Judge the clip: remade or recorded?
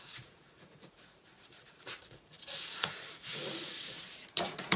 remade